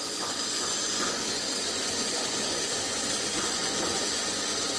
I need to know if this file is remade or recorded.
remade